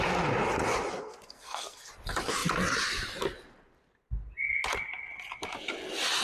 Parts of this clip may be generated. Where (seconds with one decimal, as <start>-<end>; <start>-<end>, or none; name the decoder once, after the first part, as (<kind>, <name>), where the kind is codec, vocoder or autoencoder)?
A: 1.0-1.9 (codec, SNAC)